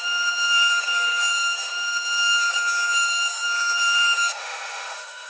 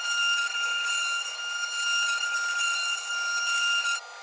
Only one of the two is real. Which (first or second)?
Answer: second